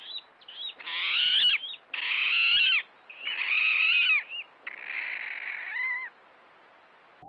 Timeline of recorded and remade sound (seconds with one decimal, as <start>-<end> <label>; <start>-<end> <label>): 0.0-7.3 recorded